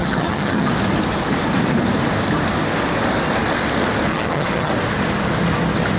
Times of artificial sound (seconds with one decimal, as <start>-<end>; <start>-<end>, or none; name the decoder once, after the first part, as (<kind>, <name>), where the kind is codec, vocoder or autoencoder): 0.0-0.7 (vocoder, HiFi-GAN); 4.1-4.7

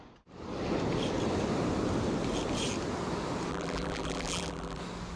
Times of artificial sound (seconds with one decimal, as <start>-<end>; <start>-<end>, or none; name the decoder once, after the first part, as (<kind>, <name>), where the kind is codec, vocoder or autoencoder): 3.5-4.8 (vocoder, BigVGAN v2)

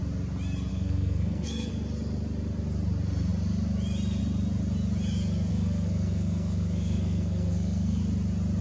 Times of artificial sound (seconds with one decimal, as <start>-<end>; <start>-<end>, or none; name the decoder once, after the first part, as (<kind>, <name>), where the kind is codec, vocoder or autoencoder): 0.7-1.7 (codec, SNAC); 5.5-8.0

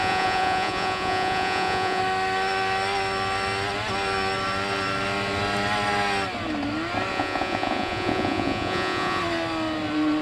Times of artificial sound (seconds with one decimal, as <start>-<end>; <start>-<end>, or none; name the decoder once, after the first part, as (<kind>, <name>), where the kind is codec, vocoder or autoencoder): 0.0-2.0 (vocoder, Vocos); 7.1-9.2

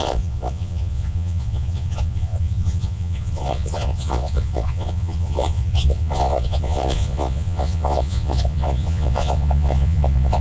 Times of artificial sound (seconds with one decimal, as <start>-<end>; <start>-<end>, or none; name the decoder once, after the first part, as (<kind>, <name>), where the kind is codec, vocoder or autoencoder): 0.0-10.4 (vocoder, Vocos)

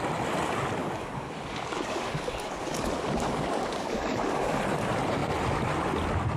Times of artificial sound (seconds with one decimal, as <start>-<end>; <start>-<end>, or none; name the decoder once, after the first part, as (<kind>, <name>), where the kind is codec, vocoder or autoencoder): 0.8-4.6 (codec, DAC)

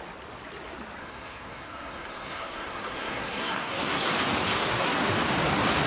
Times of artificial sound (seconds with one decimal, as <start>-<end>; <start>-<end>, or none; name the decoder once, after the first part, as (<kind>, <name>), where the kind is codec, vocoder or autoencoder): 1.0-4.1 (codec, SNAC); 4.6-5.1